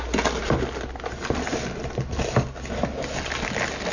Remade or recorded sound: recorded